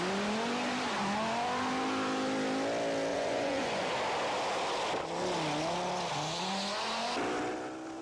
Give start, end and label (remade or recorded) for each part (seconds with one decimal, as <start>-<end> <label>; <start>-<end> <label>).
0.0-3.1 recorded; 3.1-3.9 remade; 3.9-8.0 recorded